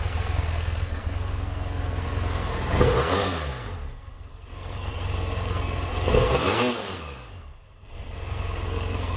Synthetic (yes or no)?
yes